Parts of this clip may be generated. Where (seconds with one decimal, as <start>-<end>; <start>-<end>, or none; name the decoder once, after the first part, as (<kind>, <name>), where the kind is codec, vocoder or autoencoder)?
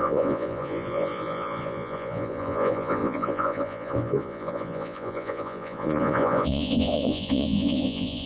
0.0-8.3 (vocoder, Vocos)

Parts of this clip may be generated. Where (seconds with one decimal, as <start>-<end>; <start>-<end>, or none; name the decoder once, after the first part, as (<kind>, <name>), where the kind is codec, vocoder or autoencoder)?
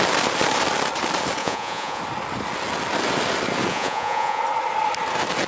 1.4-2.0 (vocoder, Vocos); 3.7-4.4